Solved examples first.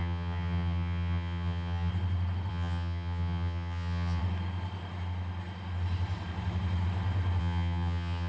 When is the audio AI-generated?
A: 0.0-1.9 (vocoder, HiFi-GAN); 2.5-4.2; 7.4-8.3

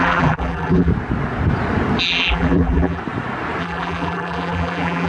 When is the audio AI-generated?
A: 0.0-0.9 (vocoder, BigVGAN v2); 2.0-3.0; 3.6-5.1

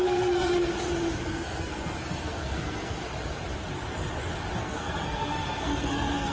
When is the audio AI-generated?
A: 0.0-0.7 (codec, SNAC); 1.2-3.0; 4.6-6.3